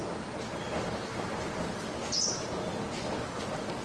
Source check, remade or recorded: remade